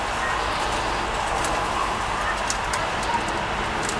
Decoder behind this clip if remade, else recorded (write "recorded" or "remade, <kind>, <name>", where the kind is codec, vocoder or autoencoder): recorded